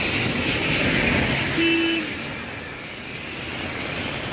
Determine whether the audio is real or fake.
real